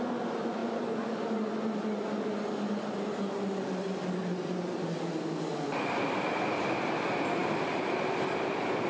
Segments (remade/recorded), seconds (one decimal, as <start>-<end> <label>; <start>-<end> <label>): 0.0-0.6 recorded; 0.6-2.2 remade; 2.2-4.2 recorded; 4.2-5.1 remade; 5.1-8.9 recorded